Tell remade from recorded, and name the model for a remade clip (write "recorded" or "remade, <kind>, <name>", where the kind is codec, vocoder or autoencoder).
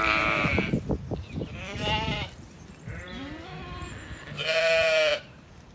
remade, vocoder, BigVGAN v2